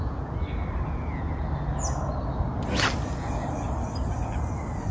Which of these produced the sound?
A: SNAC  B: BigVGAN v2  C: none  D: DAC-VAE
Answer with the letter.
C